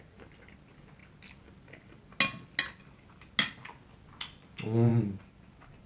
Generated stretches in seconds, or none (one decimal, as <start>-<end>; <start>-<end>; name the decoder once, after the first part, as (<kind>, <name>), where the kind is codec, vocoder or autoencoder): none